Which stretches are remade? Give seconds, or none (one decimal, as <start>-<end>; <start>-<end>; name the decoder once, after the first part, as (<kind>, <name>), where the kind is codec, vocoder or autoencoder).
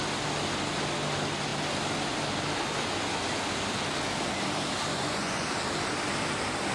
4.9-5.5 (vocoder, Vocos)